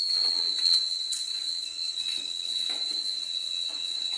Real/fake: fake